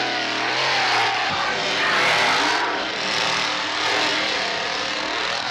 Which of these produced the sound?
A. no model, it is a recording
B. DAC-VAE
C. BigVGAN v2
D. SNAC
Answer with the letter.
A